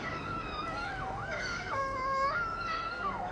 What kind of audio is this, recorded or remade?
remade